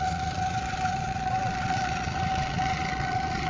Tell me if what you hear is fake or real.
fake